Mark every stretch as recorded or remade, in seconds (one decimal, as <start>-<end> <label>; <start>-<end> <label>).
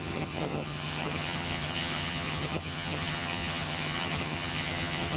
0.0-5.2 remade